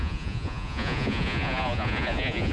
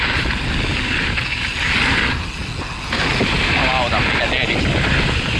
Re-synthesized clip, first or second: first